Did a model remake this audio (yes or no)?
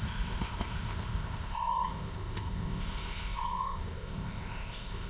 yes